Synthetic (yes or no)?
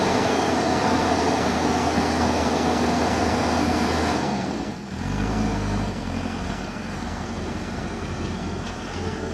yes